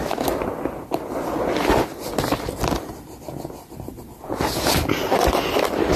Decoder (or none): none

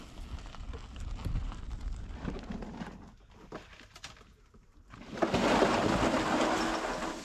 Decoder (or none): none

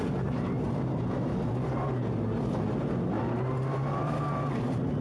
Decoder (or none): none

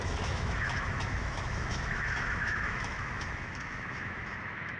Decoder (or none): autoencoder, DAC-VAE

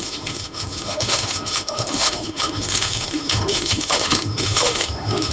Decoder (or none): autoencoder, DAC-VAE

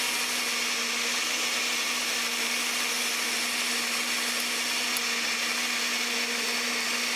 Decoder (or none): none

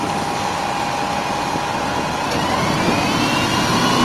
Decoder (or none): none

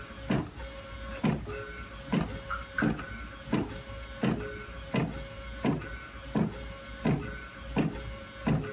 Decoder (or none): none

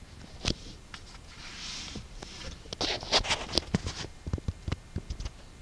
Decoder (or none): none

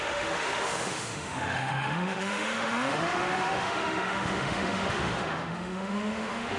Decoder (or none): autoencoder, DAC-VAE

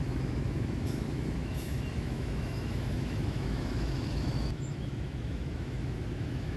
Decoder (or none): autoencoder, DAC-VAE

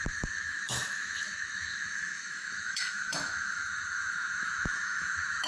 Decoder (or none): autoencoder, DAC-VAE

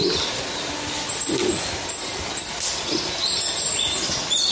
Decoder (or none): none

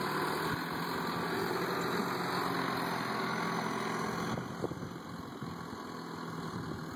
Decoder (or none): none